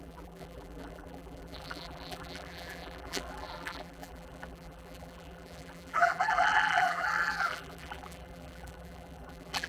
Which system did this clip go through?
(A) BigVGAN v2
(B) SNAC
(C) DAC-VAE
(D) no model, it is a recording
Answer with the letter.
A